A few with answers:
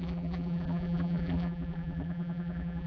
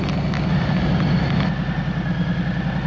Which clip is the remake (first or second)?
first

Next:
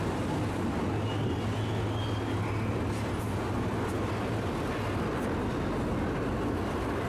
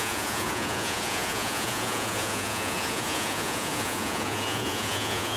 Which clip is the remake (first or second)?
second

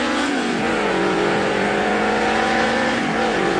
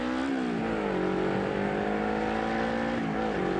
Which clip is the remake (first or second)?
first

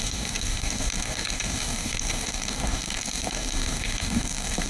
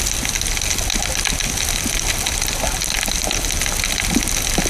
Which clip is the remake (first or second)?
first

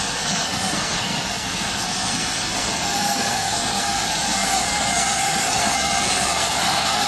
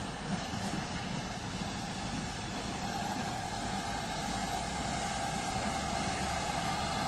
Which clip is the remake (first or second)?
first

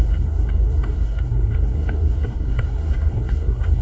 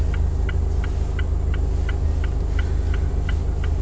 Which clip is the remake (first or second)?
first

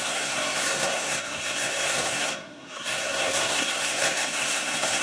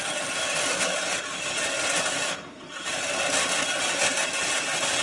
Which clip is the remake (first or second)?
first